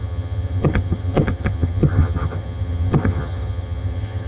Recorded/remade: remade